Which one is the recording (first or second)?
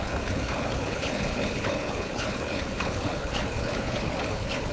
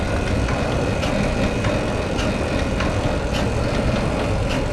second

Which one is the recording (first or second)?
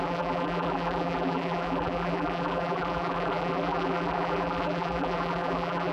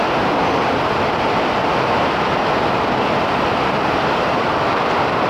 second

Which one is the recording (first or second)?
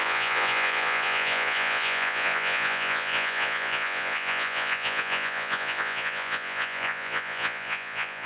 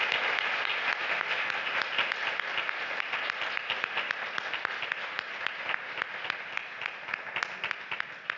second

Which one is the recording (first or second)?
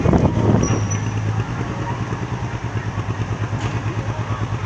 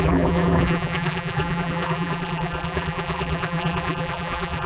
first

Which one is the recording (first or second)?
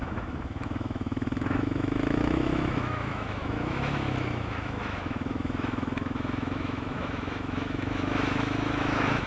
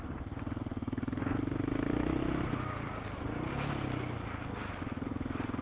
second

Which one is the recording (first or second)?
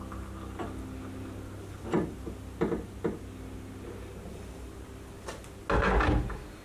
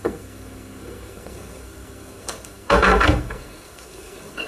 first